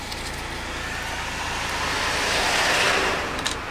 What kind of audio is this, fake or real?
real